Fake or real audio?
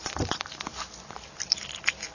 real